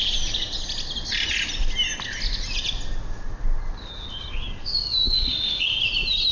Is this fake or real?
real